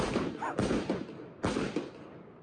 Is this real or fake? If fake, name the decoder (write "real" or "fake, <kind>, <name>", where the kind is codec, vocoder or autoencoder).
real